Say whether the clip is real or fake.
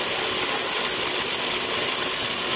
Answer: real